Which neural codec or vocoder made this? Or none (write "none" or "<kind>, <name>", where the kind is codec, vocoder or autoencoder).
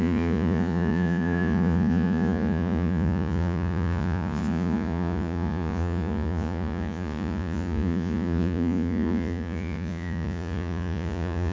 vocoder, Vocos